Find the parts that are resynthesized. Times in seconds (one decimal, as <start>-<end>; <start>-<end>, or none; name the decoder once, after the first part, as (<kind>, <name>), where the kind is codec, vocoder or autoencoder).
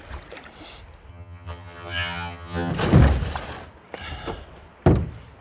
1.1-2.7 (vocoder, HiFi-GAN)